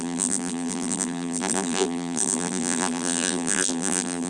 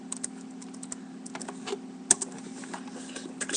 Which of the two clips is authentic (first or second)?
second